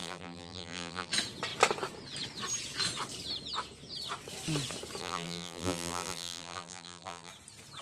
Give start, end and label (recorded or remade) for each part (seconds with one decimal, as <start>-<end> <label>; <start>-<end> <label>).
0.0-1.1 remade; 1.1-5.0 recorded; 5.0-7.3 remade; 7.3-7.8 recorded